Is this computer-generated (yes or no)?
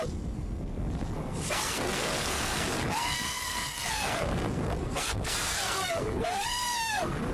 yes